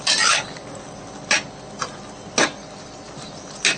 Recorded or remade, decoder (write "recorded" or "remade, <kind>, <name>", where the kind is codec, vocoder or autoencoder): recorded